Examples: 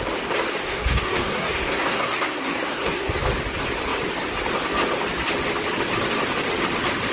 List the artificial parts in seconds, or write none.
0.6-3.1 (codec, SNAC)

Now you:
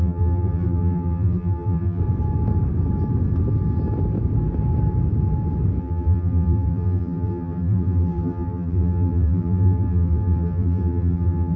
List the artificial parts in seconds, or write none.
0.0-2.0 (vocoder, BigVGAN v2); 5.8-11.6